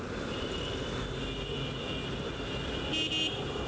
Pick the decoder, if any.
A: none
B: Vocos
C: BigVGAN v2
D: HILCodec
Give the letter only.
A